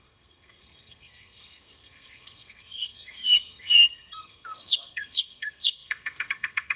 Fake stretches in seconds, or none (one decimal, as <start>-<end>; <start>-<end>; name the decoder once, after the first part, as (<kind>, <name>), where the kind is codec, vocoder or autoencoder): 0.0-6.8 (codec, SNAC)

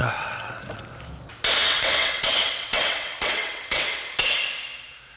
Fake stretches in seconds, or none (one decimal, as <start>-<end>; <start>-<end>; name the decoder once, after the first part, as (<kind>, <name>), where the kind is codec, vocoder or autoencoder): 0.0-0.8 (vocoder, WaveNeXt); 1.6-3.9

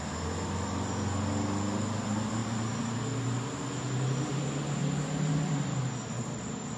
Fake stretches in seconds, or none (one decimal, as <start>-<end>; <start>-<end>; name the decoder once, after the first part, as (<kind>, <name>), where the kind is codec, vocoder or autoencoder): none

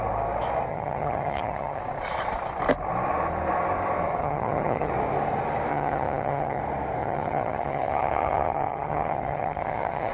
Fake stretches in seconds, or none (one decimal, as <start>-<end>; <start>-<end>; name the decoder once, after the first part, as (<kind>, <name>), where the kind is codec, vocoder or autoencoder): 0.7-1.8 (vocoder, HiFi-GAN); 4.2-4.9; 5.7-6.6; 7.0-10.1

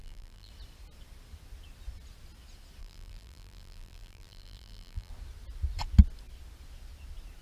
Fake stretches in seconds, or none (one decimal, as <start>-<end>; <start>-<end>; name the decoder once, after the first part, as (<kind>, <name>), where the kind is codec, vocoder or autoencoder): 0.0-0.5 (vocoder, BigVGAN v2); 2.8-5.1

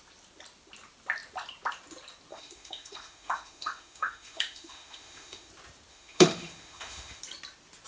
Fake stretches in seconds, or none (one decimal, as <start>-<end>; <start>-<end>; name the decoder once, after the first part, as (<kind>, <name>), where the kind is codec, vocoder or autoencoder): 2.3-5.5 (autoencoder, DAC-VAE); 5.9-7.2

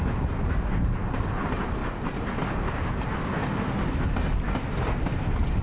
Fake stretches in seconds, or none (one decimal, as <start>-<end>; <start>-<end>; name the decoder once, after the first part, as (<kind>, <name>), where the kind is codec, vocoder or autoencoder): none

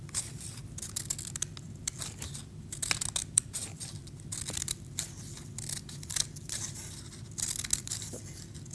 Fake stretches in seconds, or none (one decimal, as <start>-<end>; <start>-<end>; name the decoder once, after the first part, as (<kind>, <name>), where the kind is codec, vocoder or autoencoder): none